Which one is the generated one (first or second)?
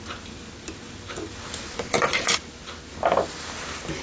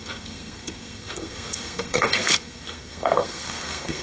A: second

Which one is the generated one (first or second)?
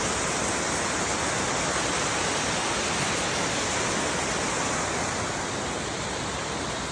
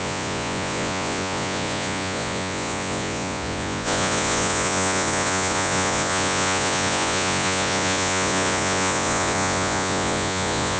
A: second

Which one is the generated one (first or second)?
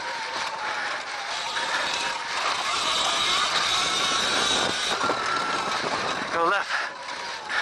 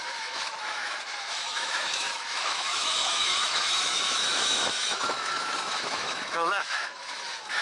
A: second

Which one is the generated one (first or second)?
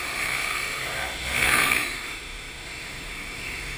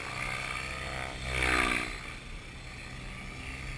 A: first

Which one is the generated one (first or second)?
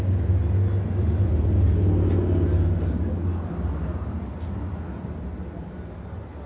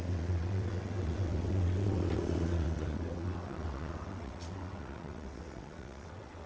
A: second